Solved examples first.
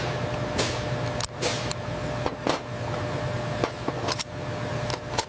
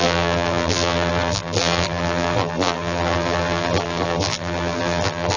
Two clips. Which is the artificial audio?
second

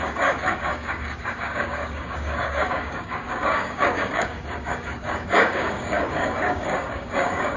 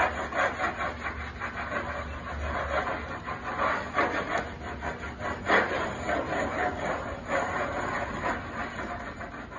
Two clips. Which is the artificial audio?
first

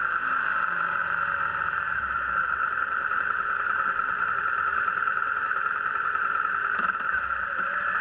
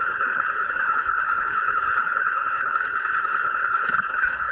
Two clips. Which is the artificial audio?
second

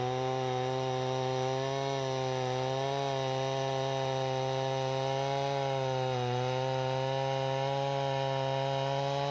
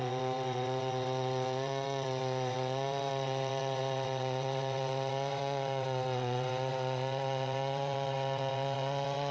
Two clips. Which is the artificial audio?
second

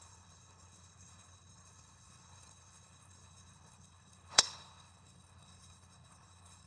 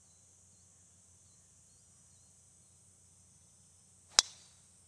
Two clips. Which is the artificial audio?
first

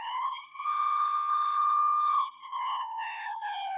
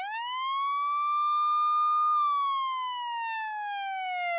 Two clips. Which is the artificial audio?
first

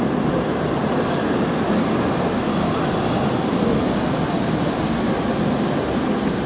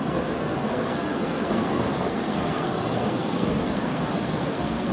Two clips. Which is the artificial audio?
second